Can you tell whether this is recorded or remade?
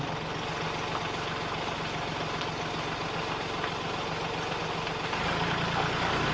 recorded